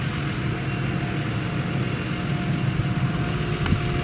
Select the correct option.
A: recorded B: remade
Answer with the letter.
A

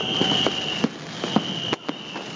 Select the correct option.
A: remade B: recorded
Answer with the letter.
B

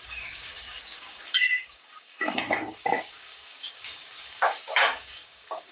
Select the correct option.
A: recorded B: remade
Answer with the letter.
B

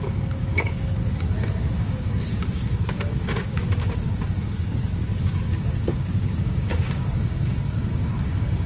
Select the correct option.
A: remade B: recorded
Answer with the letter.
A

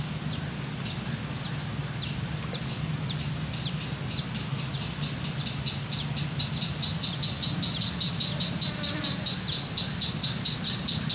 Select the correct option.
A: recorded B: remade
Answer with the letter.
A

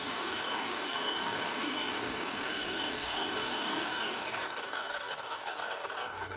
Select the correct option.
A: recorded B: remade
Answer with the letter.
B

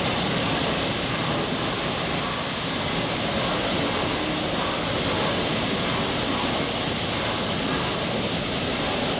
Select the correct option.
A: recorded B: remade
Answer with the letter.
A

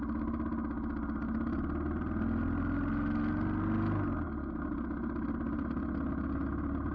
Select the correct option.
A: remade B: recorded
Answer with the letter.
B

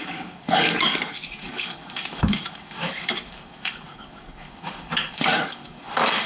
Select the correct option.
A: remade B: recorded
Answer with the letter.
A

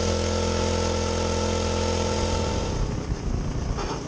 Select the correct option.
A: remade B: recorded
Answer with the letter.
B